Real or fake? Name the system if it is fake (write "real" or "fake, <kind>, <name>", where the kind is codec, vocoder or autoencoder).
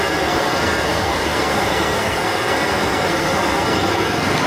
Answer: fake, codec, SNAC